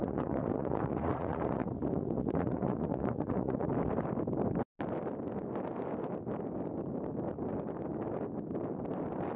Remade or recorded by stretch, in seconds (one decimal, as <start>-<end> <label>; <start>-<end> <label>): 0.0-3.7 remade; 3.7-9.4 recorded